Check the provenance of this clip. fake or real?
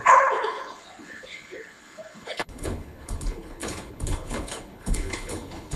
fake